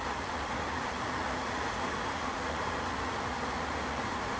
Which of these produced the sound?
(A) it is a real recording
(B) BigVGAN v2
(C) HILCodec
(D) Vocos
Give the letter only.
D